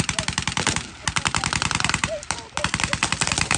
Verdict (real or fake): real